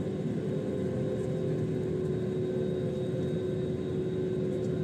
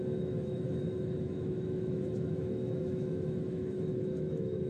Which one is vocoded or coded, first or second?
second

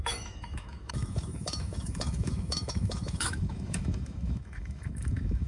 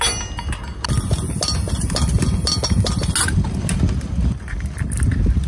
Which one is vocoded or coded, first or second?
first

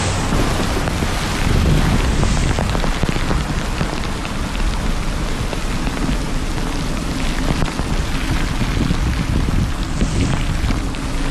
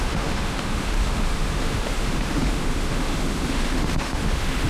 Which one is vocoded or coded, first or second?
second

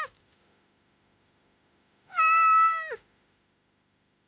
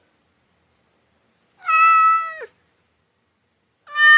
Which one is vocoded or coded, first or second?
first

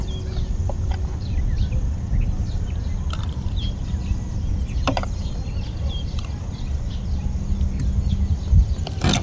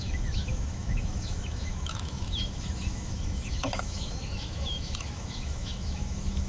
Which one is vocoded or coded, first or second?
second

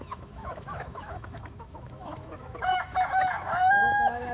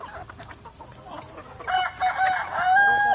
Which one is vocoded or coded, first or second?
first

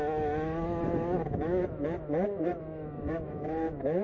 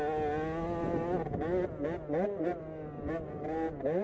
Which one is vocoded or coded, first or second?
first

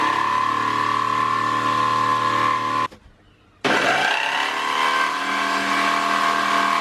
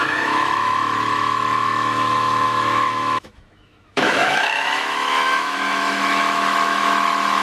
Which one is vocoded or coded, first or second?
second